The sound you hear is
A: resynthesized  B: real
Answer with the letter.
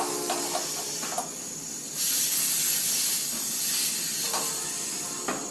B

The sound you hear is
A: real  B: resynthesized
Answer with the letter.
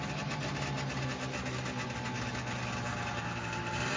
A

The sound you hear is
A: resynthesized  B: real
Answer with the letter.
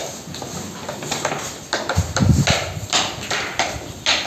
B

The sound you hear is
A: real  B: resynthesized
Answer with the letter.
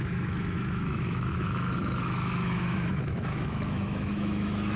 B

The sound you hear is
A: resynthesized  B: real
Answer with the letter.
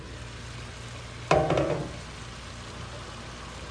B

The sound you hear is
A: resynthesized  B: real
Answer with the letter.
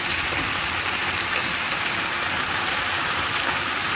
A